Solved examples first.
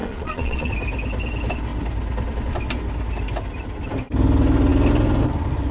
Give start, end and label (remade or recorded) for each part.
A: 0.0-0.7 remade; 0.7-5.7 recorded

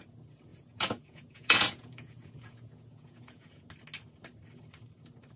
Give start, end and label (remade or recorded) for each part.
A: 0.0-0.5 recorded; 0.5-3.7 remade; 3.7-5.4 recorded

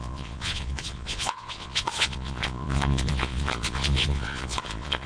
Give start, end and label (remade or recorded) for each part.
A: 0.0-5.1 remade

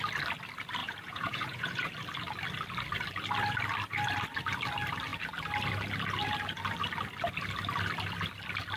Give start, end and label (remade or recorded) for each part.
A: 0.0-0.8 recorded; 0.8-1.9 remade; 1.9-8.8 recorded